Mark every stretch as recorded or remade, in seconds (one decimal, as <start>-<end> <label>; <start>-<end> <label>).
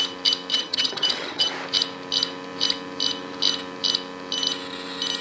0.0-0.5 recorded; 0.5-1.5 remade; 1.5-5.2 recorded